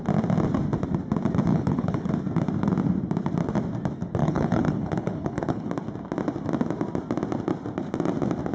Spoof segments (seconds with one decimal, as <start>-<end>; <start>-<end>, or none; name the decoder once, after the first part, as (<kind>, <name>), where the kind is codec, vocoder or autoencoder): 1.5-2.1 (codec, HILCodec); 4.2-5.7